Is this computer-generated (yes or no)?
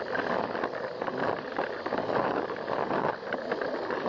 no